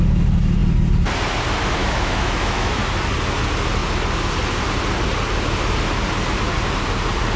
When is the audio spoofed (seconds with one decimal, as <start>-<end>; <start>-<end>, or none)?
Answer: 1.8-2.8